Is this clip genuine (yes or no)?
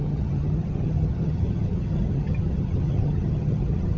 no